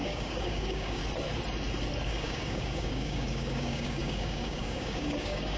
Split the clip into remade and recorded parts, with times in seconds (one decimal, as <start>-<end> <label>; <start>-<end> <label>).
0.0-1.0 remade; 1.0-2.1 recorded; 2.1-5.6 remade